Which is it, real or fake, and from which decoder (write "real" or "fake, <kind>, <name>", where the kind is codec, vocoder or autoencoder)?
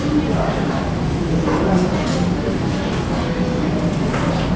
real